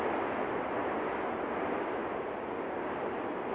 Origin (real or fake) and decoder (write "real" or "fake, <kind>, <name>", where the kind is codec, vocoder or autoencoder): real